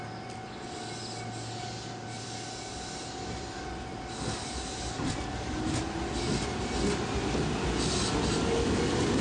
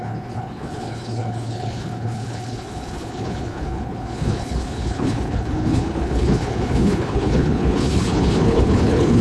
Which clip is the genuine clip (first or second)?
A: first